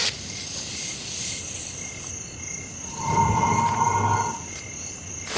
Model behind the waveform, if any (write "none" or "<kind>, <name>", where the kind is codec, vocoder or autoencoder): none